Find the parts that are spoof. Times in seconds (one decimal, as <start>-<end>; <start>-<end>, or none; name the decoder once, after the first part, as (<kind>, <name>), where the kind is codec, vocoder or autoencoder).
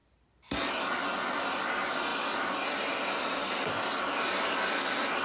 none